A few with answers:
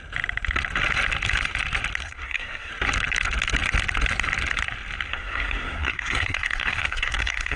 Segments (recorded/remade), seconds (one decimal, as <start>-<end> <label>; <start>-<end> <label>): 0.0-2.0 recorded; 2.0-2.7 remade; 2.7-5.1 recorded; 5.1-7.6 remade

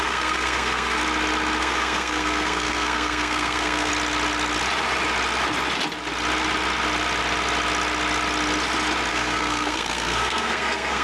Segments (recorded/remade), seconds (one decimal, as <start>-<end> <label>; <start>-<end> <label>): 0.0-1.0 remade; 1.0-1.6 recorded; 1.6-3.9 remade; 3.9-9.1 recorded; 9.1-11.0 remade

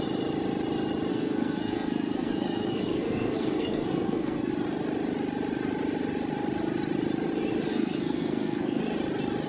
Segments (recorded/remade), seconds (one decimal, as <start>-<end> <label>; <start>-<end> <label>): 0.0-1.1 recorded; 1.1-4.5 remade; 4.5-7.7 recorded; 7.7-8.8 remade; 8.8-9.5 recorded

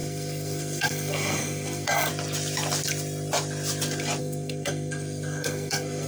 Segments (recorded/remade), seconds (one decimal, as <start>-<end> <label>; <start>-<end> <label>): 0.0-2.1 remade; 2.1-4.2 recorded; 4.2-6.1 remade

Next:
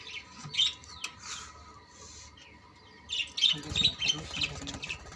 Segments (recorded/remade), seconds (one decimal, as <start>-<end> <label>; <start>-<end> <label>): 0.0-5.2 recorded

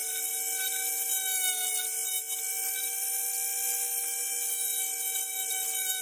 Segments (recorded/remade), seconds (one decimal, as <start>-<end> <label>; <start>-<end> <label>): 0.0-6.0 recorded